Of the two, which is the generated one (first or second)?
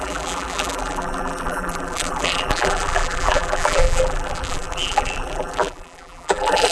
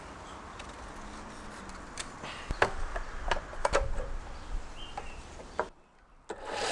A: first